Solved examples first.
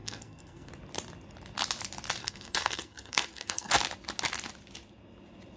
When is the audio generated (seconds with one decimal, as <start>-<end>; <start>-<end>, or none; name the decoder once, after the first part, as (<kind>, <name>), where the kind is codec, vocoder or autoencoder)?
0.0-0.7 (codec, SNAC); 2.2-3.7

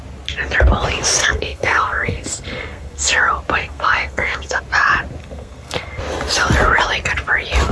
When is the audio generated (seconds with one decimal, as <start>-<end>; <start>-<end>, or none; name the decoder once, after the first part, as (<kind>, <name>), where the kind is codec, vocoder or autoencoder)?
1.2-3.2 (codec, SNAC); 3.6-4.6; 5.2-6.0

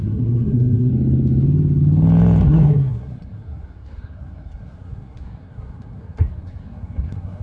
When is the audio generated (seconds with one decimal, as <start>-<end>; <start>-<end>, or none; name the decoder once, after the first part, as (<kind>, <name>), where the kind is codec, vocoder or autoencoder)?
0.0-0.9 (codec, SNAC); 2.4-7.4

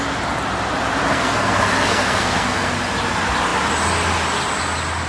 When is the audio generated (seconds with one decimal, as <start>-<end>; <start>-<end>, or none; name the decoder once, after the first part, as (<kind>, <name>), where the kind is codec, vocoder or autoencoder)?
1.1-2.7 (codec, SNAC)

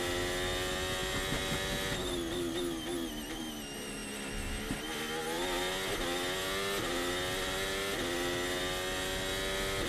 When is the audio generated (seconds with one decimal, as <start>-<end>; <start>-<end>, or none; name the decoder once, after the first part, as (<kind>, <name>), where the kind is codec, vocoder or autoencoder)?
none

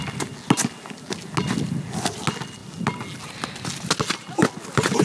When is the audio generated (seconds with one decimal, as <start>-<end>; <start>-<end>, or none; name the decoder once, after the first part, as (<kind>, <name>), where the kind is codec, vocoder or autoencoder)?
none

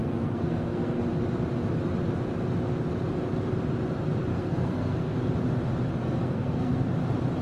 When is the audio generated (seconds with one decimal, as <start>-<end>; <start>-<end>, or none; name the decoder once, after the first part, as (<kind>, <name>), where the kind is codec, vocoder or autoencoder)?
0.0-1.0 (codec, SNAC); 4.3-5.3; 6.0-6.8

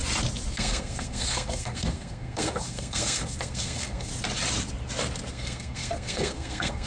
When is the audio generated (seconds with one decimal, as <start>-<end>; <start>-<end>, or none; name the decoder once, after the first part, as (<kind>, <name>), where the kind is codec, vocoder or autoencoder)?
0.5-4.1 (codec, SNAC); 5.3-6.9